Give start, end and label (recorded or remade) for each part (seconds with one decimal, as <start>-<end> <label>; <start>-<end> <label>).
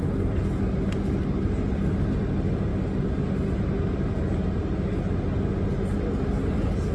0.0-6.9 recorded